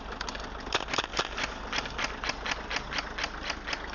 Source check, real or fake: real